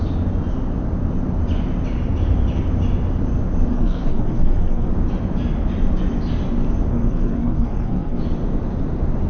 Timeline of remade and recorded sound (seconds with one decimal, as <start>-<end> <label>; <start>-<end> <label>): 0.0-3.7 recorded; 3.7-4.9 remade; 4.9-6.9 recorded; 6.9-8.2 remade; 8.2-9.3 recorded